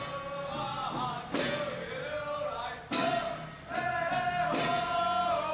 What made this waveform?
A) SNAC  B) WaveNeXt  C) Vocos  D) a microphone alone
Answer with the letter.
D